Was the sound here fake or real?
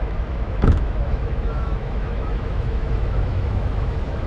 fake